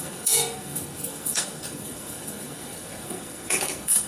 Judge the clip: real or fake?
fake